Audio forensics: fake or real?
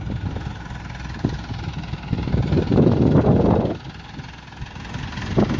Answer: real